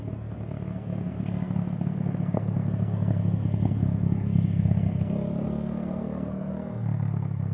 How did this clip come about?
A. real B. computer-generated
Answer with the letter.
B